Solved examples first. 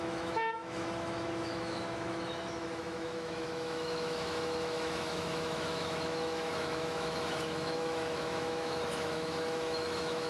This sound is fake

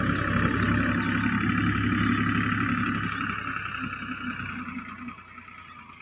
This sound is real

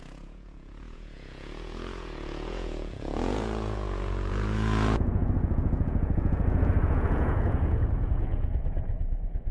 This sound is fake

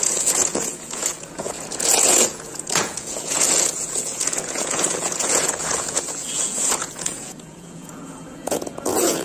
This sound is fake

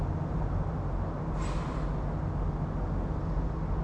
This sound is real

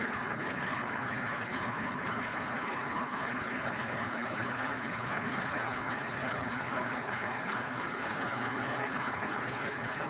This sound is fake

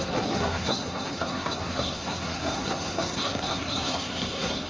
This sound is fake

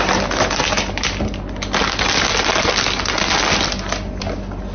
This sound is real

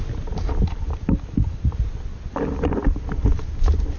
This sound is real